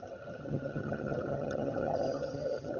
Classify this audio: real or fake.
fake